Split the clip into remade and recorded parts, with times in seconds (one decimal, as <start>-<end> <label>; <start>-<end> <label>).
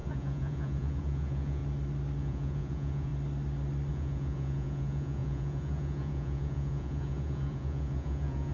0.0-1.6 remade; 1.6-2.2 recorded; 2.2-3.1 remade; 3.1-3.9 recorded; 3.9-8.5 remade